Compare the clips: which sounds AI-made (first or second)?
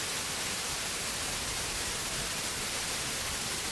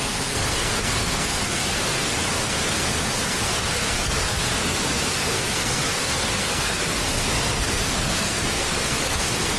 second